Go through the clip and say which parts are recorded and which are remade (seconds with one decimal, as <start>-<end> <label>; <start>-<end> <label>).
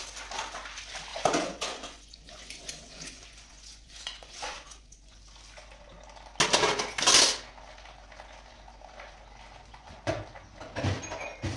0.0-1.1 recorded; 1.1-5.2 remade; 5.2-9.7 recorded; 9.7-10.2 remade; 10.2-11.6 recorded